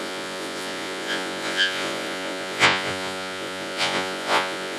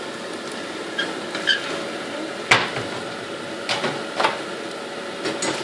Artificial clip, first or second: first